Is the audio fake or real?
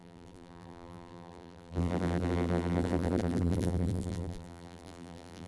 fake